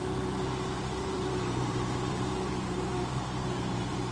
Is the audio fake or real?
fake